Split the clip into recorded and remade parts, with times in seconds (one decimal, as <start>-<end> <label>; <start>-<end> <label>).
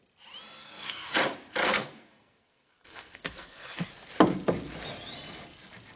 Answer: 0.0-0.6 recorded; 0.6-1.1 remade; 1.1-1.6 recorded; 1.6-3.8 remade; 3.8-6.0 recorded